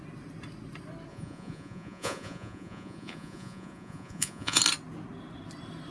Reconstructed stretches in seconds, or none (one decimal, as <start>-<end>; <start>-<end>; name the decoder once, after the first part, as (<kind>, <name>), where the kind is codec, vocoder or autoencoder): 1.1-4.6 (vocoder, Vocos)